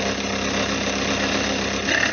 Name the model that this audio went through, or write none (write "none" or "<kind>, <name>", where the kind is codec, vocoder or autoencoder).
none